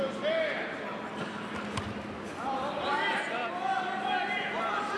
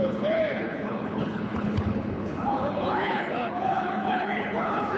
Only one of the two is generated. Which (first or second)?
second